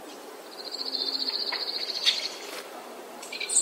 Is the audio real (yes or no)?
no